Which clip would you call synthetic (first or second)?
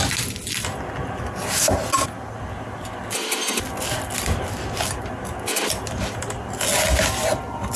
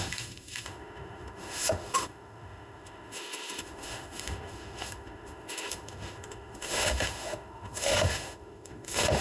second